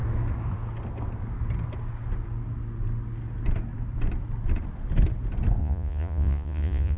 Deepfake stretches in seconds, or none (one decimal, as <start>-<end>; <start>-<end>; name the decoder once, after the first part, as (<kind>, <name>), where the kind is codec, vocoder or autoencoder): 5.6-7.0 (vocoder, Vocos)